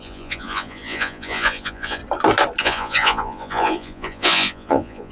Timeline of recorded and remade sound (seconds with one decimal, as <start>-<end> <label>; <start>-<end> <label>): 0.0-2.0 remade; 2.0-2.6 recorded; 2.6-5.1 remade